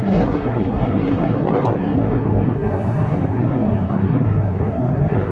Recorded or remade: remade